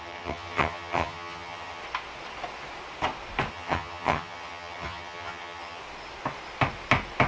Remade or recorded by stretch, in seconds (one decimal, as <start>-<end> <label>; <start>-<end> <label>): 0.0-1.8 remade; 1.8-3.5 recorded; 3.5-5.8 remade; 5.8-7.3 recorded